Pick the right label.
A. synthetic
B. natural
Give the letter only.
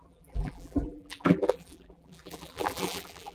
A